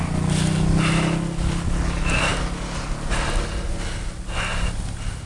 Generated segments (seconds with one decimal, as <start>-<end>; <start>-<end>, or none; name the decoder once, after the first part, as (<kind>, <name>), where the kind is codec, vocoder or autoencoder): none